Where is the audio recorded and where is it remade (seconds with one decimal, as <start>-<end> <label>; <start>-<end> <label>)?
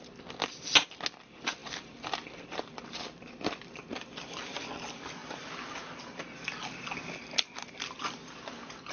0.0-1.6 recorded; 1.6-4.6 remade; 4.6-8.9 recorded